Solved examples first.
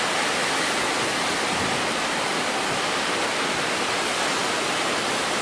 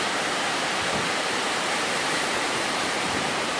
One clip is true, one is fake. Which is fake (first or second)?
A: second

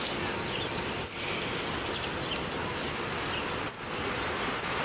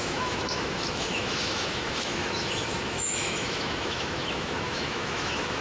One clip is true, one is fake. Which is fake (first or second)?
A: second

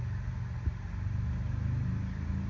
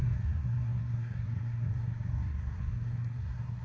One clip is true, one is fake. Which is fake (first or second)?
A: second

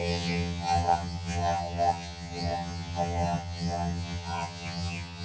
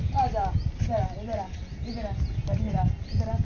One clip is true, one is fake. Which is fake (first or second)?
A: first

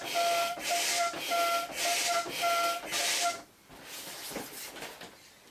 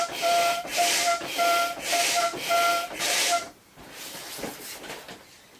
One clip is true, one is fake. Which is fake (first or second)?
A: second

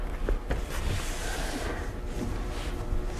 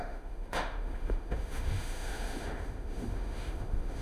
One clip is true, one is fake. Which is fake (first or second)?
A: second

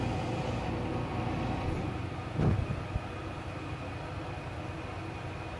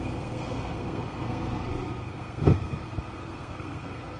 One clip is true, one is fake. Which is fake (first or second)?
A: second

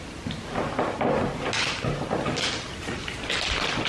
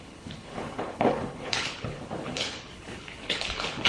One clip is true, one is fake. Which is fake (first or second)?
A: second